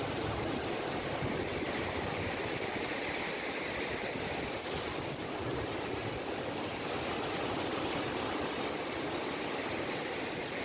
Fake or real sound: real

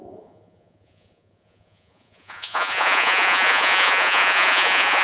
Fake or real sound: fake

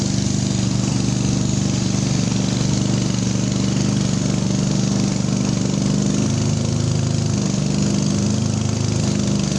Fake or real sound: real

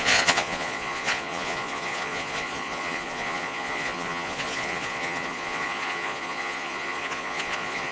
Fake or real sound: fake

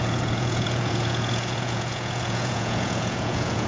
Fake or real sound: fake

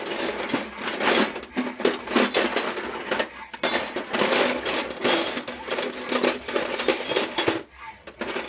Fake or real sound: real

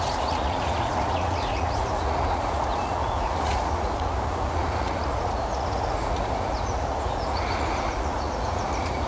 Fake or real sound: fake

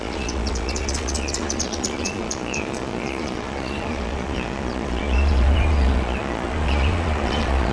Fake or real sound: fake